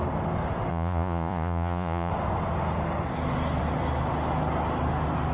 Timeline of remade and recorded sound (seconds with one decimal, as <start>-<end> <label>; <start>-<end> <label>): 0.0-0.7 recorded; 0.7-2.1 remade; 2.1-5.3 recorded